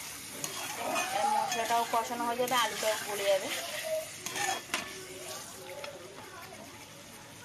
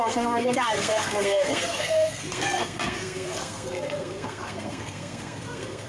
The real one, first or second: first